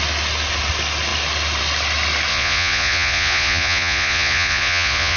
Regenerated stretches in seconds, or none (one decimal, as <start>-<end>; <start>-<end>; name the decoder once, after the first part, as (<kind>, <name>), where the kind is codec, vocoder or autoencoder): 2.3-5.2 (vocoder, Vocos)